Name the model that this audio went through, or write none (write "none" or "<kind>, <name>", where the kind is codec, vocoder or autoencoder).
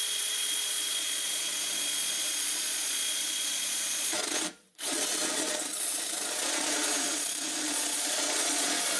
vocoder, Vocos